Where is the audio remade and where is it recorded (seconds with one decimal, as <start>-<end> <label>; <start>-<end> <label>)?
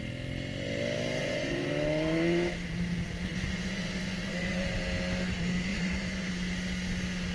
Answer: 0.0-1.2 recorded; 1.2-1.7 remade; 1.7-3.3 recorded; 3.3-4.8 remade; 4.8-5.7 recorded; 5.7-6.3 remade; 6.3-7.3 recorded